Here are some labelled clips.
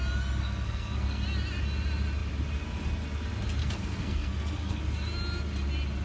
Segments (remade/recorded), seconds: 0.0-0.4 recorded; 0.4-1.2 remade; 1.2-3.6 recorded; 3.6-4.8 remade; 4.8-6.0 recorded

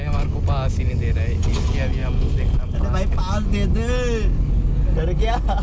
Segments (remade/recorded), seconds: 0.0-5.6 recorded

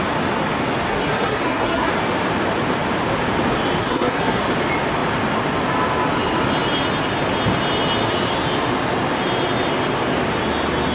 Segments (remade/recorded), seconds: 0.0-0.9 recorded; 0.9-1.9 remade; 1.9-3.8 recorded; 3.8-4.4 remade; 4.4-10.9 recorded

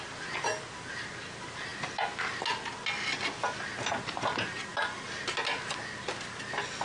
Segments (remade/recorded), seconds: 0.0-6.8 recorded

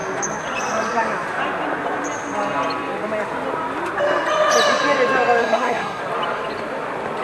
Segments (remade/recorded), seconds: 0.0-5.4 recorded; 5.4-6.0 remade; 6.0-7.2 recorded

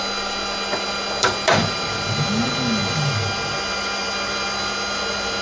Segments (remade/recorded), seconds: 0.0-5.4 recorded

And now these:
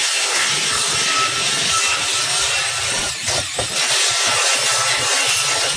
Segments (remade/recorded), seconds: 0.0-0.5 remade; 0.5-5.8 recorded

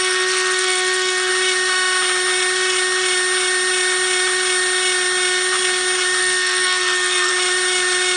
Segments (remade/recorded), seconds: 0.0-1.3 remade; 1.3-6.2 recorded; 6.2-7.3 remade; 7.3-8.2 recorded